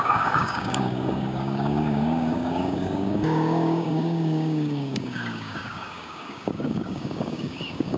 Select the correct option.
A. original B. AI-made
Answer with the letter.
B